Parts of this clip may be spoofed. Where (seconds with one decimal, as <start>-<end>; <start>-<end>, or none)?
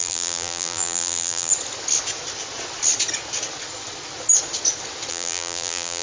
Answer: 0.0-1.5; 5.1-6.0